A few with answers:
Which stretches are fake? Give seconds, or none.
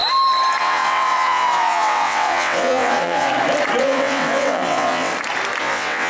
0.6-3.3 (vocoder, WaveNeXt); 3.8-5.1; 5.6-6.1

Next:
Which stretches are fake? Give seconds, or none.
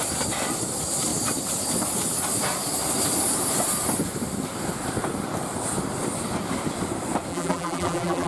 7.3-8.3 (vocoder, BigVGAN v2)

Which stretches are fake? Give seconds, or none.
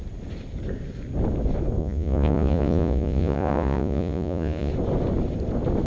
1.8-4.7 (vocoder, Vocos)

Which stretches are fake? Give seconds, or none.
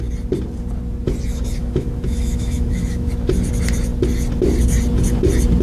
1.6-3.1 (autoencoder, DAC-VAE)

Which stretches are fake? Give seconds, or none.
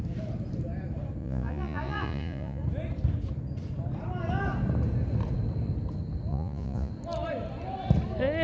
1.2-2.6 (vocoder, Vocos); 6.3-6.9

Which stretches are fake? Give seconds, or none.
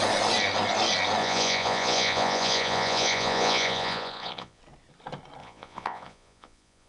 1.2-4.6 (vocoder, Vocos); 5.4-6.9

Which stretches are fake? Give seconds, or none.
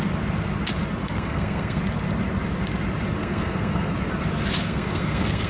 1.0-1.8 (codec, SNAC); 3.2-3.9; 4.6-5.5